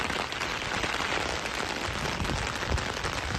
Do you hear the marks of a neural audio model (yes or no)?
no